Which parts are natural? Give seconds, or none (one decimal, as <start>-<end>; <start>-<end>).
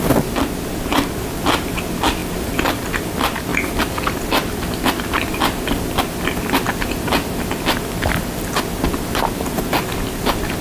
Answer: 0.0-10.6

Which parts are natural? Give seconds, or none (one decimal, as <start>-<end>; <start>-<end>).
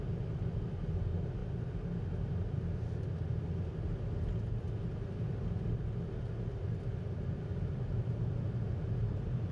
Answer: 0.0-9.5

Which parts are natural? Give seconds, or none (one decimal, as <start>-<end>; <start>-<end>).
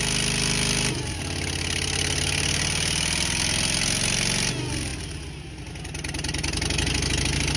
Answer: 0.0-7.6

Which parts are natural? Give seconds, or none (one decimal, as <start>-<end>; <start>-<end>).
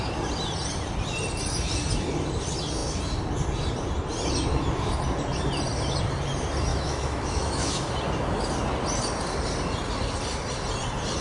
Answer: 0.0-6.7; 7.9-11.2